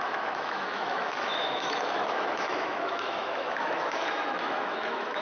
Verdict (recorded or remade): remade